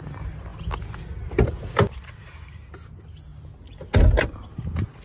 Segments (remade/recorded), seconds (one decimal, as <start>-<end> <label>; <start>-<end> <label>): 0.0-5.0 recorded